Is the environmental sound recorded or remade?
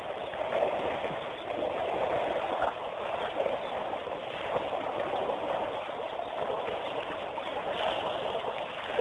remade